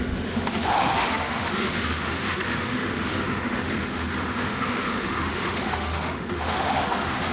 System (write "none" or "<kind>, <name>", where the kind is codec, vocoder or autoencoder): autoencoder, DAC-VAE